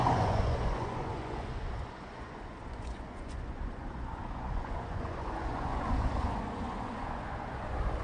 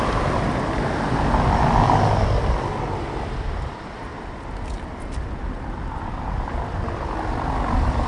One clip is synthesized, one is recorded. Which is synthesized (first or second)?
first